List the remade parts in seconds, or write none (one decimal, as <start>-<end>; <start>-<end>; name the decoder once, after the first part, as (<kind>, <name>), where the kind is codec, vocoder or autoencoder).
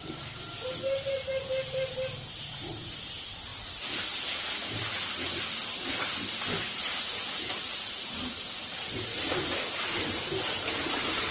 0.0-11.3 (vocoder, BigVGAN v2)